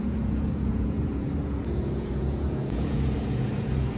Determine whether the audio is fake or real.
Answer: fake